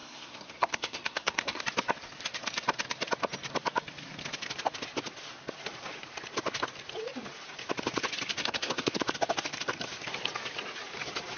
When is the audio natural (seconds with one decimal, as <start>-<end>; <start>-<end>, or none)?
1.6-8.4; 9.0-11.4

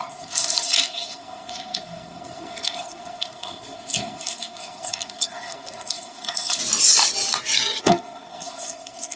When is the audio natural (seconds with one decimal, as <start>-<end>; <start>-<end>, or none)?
6.6-7.8

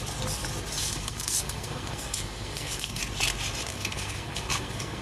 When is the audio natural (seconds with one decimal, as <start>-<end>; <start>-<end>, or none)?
0.0-0.8; 3.0-3.7

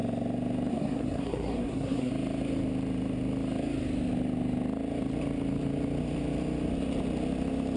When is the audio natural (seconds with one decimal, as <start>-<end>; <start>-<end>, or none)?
0.0-0.7; 2.1-7.8

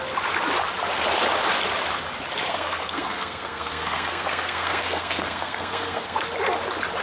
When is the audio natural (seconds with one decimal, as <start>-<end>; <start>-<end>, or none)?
0.0-2.5; 6.2-7.0

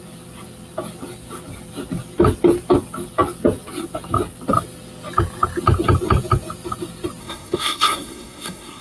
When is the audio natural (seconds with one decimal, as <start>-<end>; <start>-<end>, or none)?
0.0-7.2